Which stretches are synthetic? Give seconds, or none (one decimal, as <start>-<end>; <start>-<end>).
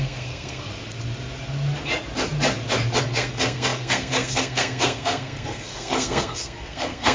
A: 0.0-0.7; 3.0-7.1